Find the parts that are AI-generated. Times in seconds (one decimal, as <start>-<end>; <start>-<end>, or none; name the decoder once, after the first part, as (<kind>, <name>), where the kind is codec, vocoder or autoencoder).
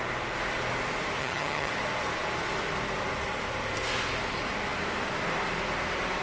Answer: 1.2-1.7 (vocoder, HiFi-GAN)